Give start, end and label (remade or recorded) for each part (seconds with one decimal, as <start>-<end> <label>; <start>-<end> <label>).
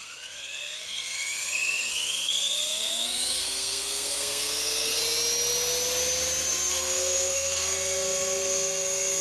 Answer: 0.0-5.0 remade; 5.0-6.7 recorded; 6.7-9.2 remade